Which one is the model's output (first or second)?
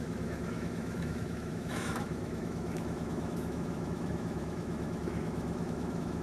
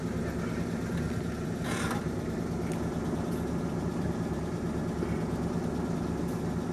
first